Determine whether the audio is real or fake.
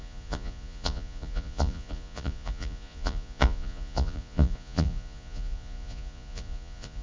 fake